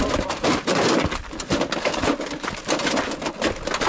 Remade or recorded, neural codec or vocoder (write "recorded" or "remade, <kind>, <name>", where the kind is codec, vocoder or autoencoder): recorded